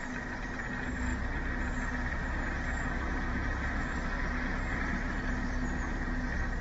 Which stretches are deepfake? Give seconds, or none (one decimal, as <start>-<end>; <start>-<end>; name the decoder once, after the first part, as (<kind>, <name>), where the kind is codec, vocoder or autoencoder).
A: none